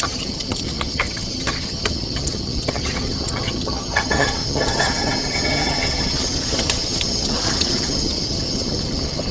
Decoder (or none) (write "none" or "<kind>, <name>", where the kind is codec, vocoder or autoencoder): vocoder, HiFi-GAN